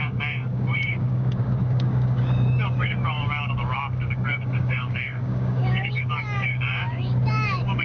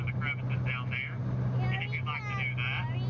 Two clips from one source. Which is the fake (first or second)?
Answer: first